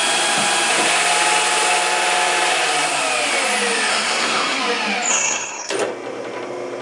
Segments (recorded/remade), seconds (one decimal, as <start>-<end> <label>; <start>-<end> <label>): 0.0-3.9 recorded; 3.9-4.6 remade; 4.6-5.1 recorded; 5.1-5.7 remade; 5.7-6.8 recorded